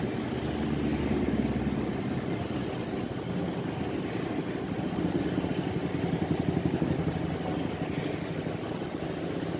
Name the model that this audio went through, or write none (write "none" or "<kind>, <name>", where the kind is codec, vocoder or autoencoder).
none